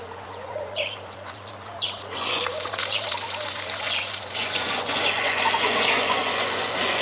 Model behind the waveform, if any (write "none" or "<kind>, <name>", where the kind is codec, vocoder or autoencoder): vocoder, Vocos